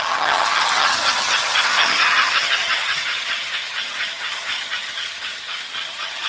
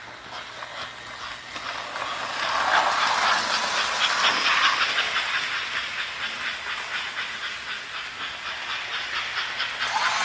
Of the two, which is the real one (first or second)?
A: second